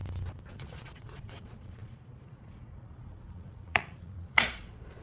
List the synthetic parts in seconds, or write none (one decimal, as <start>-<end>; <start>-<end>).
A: 0.5-5.0